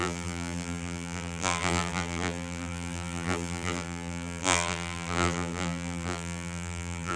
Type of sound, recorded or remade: remade